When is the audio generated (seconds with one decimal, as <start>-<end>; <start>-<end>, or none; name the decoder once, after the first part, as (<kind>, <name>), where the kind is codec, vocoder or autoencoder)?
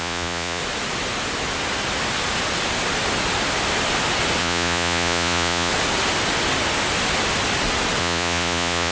0.0-0.6 (vocoder, Vocos); 4.4-5.7; 8.0-8.9